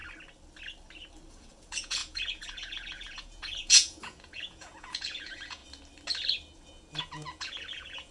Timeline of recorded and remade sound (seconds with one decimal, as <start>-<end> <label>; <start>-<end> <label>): 0.0-1.3 recorded; 1.3-5.6 remade; 5.6-7.0 recorded; 7.0-8.1 remade